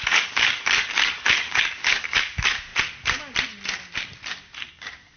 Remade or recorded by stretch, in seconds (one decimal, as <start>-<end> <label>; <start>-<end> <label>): 0.0-2.7 remade; 2.7-4.7 recorded; 4.7-5.2 remade